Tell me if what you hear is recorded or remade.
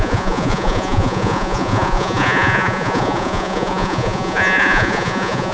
remade